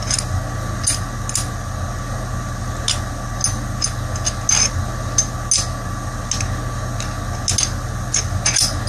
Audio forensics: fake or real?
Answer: real